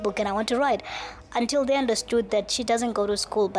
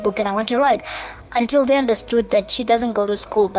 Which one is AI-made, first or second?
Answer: second